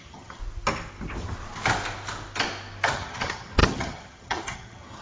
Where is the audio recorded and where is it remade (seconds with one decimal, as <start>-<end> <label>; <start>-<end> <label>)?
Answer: 0.0-0.4 remade; 0.4-2.9 recorded; 2.9-5.0 remade